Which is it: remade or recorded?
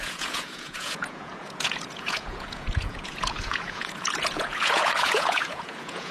remade